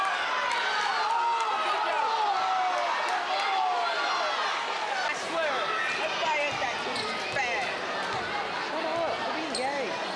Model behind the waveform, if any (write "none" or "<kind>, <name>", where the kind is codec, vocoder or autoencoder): none